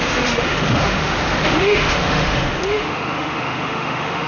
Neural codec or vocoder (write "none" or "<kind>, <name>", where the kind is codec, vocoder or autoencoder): autoencoder, DAC-VAE